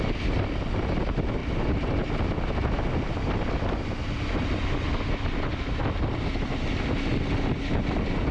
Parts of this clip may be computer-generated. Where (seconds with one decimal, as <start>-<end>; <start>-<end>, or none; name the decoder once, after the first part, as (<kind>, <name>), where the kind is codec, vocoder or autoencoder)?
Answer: none